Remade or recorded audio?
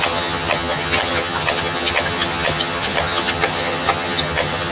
remade